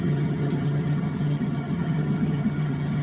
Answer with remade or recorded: remade